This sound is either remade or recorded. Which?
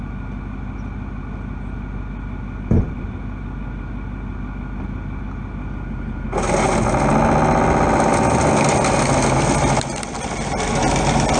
recorded